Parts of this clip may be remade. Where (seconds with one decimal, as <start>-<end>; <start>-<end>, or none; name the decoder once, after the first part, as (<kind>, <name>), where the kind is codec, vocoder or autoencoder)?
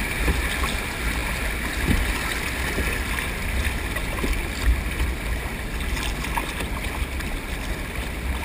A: none